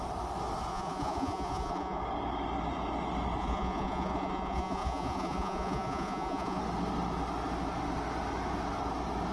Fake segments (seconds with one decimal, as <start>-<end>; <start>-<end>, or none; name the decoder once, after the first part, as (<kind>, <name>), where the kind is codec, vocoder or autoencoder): 0.7-2.0 (vocoder, Vocos); 3.4-6.6